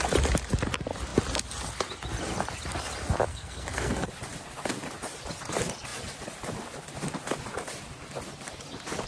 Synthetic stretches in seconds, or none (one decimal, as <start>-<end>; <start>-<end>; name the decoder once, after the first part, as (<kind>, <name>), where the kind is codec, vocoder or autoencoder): 3.3-4.1 (codec, SNAC)